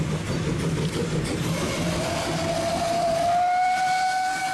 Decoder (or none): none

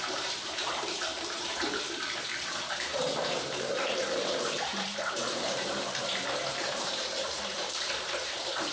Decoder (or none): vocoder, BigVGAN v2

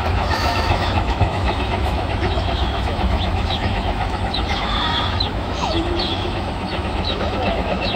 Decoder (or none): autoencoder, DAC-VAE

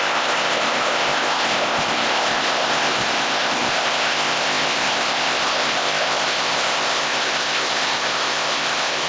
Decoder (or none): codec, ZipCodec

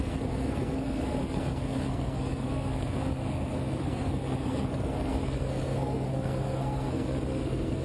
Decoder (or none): codec, SNAC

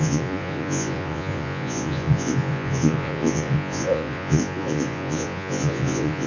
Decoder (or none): vocoder, Vocos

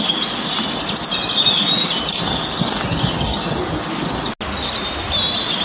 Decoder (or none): none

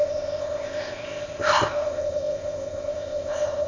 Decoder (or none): codec, ZipCodec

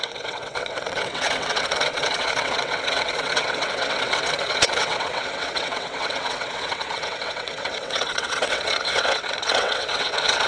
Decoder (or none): vocoder, WaveNeXt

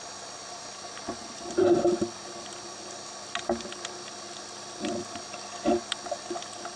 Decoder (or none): none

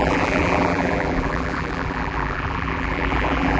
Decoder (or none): vocoder, BigVGAN v2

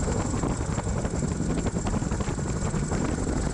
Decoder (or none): none